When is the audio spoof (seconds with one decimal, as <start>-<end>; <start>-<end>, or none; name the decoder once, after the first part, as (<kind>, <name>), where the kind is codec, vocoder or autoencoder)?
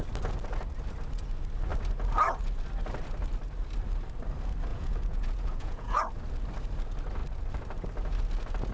4.7-6.0 (vocoder, Vocos)